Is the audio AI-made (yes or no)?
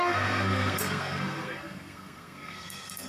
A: yes